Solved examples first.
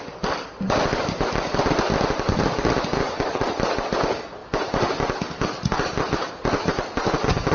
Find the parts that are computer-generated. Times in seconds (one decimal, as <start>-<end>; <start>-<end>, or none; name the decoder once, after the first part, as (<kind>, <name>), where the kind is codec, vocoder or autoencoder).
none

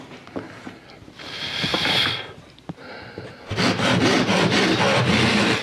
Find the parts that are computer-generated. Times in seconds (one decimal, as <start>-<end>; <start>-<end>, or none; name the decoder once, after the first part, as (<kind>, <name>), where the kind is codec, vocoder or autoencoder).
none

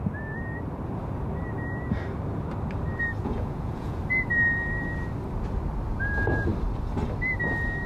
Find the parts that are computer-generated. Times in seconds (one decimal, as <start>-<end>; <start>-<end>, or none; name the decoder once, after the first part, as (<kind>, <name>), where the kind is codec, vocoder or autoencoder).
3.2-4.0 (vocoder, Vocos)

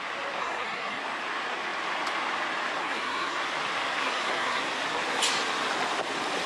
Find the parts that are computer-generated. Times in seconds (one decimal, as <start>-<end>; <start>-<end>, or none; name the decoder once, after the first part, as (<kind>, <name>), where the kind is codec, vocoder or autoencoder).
0.4-1.0 (codec, SNAC); 2.8-3.4; 4.0-4.6

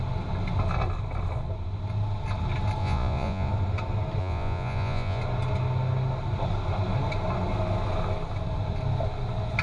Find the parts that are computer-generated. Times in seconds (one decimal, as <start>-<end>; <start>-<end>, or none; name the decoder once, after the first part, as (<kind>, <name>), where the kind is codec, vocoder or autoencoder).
2.8-3.5 (vocoder, Vocos); 4.2-5.2

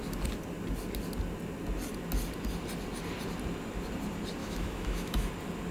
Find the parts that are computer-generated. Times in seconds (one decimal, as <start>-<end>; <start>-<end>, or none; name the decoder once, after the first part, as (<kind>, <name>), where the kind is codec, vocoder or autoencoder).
4.4-5.3 (autoencoder, DAC-VAE)

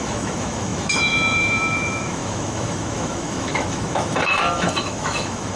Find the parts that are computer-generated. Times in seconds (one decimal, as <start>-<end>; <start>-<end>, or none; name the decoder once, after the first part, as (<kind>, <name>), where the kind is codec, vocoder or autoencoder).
0.0-5.6 (autoencoder, DAC-VAE)